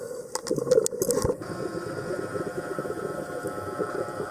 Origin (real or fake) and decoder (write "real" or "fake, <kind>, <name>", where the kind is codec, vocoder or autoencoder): real